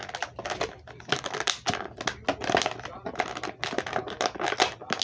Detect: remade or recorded recorded